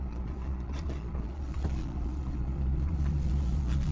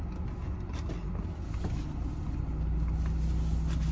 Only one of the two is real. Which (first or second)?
second